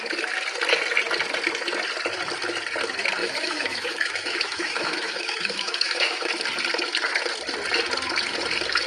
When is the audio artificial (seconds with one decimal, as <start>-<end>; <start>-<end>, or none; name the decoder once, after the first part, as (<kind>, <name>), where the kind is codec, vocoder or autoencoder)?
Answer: 3.2-6.3 (autoencoder, DAC-VAE)